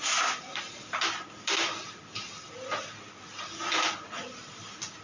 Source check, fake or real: real